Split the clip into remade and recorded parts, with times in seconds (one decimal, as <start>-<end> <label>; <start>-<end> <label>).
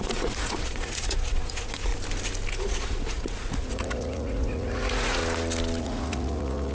0.0-1.9 remade; 1.9-2.5 recorded; 2.5-5.2 remade; 5.2-5.8 recorded; 5.8-6.7 remade